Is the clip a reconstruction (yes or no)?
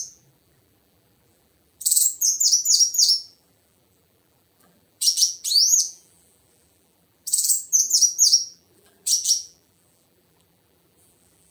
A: yes